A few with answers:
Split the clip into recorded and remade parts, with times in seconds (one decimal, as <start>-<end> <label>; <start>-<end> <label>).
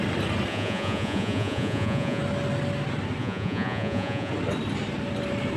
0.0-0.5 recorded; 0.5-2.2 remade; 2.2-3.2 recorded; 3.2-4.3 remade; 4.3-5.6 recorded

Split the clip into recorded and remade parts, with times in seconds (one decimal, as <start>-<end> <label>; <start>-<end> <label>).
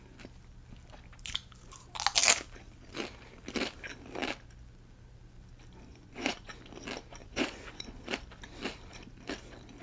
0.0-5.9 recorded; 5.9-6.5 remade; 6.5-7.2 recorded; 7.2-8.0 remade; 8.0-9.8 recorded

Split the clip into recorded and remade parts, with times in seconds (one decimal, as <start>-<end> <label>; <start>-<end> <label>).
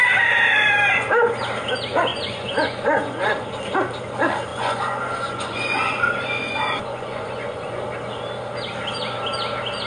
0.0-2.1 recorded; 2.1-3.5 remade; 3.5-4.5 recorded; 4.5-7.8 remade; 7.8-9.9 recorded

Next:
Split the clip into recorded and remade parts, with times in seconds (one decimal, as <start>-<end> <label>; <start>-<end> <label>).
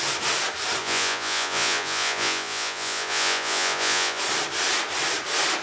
0.0-0.8 recorded; 0.8-4.2 remade; 4.2-5.6 recorded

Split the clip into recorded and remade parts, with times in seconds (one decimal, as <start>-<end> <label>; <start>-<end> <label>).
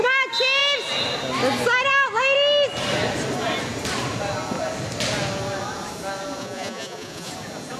0.0-6.4 recorded; 6.4-7.3 remade; 7.3-7.8 recorded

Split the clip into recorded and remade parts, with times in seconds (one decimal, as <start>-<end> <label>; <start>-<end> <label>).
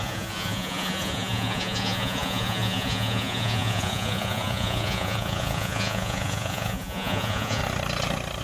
0.0-7.6 remade; 7.6-8.4 recorded